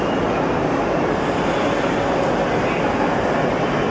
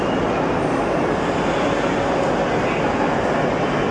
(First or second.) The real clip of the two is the second